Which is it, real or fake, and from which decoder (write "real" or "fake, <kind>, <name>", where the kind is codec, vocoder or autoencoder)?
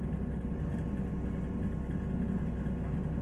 real